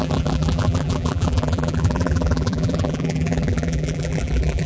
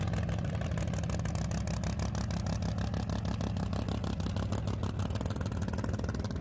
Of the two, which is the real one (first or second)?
second